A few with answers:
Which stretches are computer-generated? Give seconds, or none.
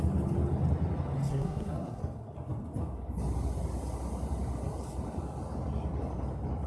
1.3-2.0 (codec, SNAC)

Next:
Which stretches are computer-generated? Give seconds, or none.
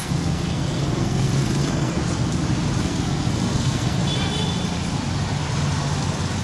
0.0-2.0 (codec, SNAC); 2.8-4.0